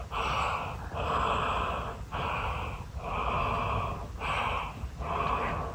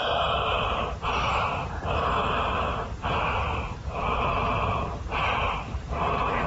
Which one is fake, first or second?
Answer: second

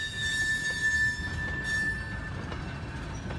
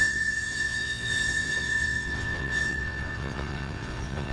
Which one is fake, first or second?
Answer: second